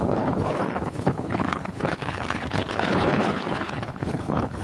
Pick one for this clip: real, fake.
fake